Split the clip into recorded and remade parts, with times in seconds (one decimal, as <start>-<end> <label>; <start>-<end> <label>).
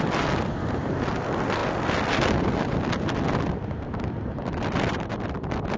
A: 0.0-5.8 recorded